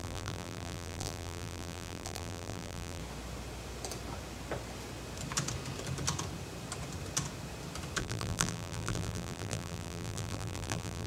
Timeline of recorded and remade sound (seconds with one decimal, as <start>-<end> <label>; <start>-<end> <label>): 0.0-3.0 remade; 3.0-8.0 recorded; 8.0-11.1 remade